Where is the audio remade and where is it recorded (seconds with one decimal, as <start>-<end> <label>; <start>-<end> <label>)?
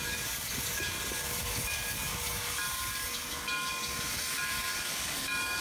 0.0-5.6 remade